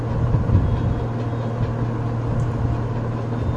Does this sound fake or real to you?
real